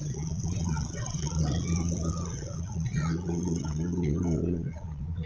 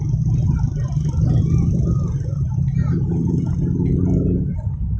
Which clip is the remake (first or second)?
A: first